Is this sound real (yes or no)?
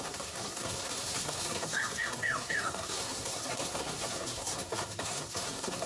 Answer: no